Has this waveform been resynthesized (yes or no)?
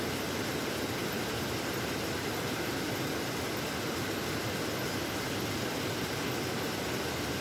no